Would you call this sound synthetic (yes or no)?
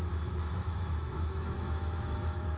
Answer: yes